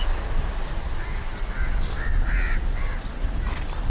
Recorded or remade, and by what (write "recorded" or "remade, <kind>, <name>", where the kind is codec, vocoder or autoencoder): recorded